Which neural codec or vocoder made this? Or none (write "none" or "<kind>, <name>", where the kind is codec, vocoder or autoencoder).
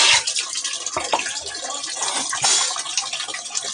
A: none